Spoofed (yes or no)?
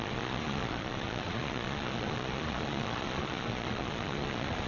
yes